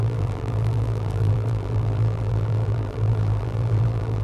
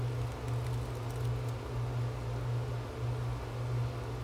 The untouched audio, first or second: second